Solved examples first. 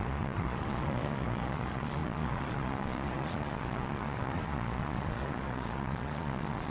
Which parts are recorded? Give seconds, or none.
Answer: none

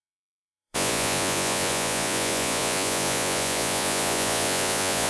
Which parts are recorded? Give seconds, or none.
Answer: none

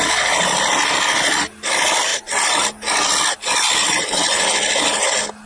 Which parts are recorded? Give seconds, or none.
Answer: 0.0-5.5

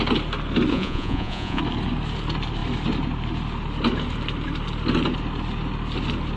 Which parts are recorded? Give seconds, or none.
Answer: 0.0-0.7; 1.6-6.4